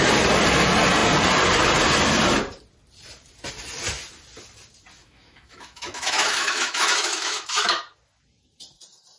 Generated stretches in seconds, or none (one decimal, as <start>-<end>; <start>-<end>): 5.0-7.8